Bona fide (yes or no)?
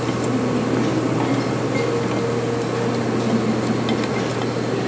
yes